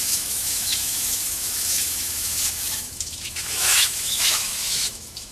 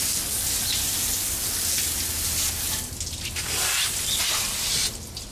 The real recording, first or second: second